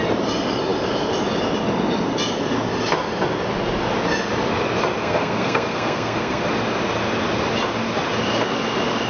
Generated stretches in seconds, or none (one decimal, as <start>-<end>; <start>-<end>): 5.0-6.4